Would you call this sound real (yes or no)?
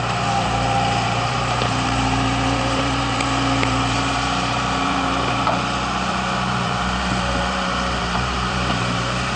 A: no